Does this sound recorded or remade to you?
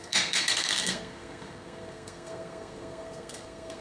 remade